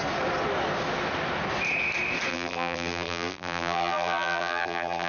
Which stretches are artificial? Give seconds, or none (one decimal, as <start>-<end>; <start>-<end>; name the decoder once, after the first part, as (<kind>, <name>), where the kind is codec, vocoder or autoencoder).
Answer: 2.3-5.1 (vocoder, BigVGAN v2)